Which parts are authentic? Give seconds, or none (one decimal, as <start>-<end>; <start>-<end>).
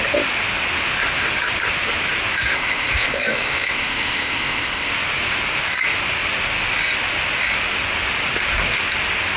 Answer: 0.0-2.5; 4.9-9.4